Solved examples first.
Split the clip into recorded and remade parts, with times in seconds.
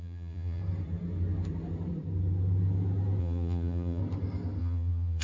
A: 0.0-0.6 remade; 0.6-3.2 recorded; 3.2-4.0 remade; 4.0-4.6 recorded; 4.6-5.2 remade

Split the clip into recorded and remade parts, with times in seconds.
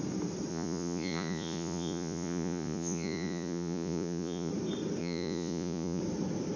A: 0.0-0.5 recorded; 0.5-4.5 remade; 4.5-5.0 recorded; 5.0-6.0 remade; 6.0-6.6 recorded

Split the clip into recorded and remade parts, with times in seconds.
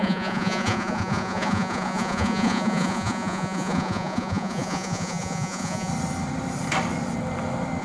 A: 0.0-5.9 remade; 5.9-7.8 recorded